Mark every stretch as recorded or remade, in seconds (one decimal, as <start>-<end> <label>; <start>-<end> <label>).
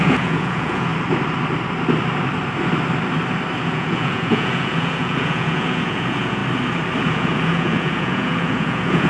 0.0-0.9 remade; 0.9-3.6 recorded; 3.6-6.4 remade; 6.4-7.0 recorded; 7.0-9.1 remade